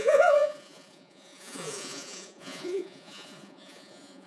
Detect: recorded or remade remade